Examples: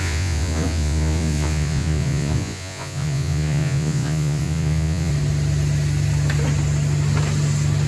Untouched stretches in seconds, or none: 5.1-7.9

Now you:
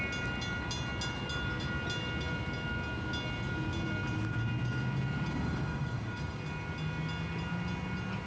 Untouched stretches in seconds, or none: 0.0-5.3; 6.4-8.3

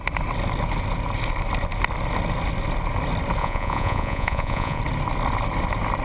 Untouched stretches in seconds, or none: 0.0-3.4; 4.8-6.0

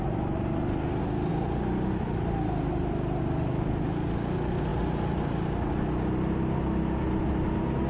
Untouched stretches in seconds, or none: 0.0-7.9

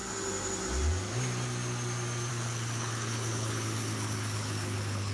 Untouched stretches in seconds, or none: 0.0-2.3